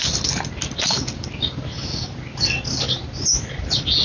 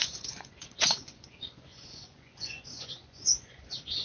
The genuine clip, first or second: first